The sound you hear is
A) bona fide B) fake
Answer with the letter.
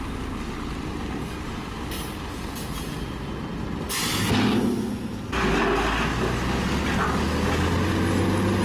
A